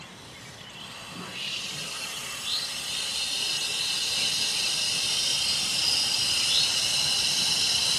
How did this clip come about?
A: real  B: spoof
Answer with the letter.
A